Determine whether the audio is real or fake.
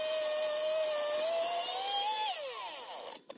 real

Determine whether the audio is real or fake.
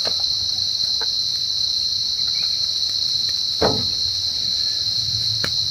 real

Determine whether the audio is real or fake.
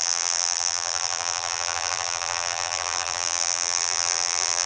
fake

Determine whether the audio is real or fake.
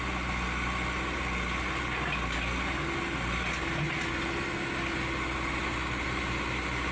real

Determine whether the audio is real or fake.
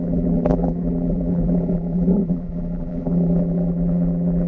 fake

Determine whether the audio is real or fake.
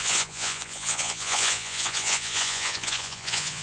fake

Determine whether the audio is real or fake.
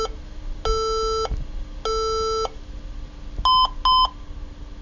real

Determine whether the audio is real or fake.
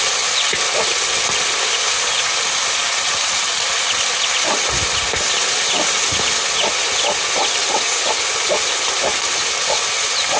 real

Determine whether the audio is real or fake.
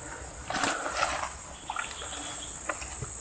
real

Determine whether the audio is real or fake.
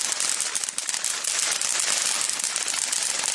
real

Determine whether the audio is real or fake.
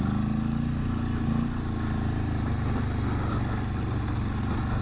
real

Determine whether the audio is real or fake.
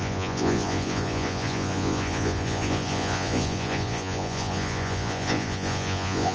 fake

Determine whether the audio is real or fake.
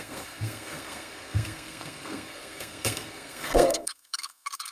fake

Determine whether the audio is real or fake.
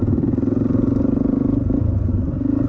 real